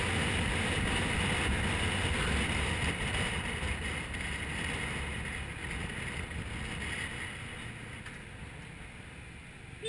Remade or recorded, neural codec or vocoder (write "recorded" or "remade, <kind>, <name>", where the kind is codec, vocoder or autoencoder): recorded